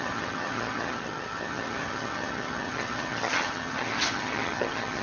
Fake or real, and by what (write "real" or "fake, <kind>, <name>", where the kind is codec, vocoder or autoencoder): fake, vocoder, HiFi-GAN